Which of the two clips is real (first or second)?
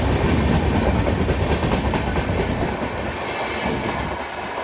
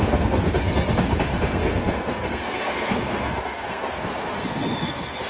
first